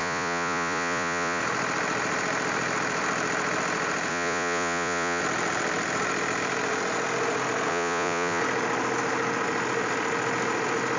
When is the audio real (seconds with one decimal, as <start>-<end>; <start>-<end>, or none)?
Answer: 1.4-4.1; 5.2-7.7; 8.4-11.0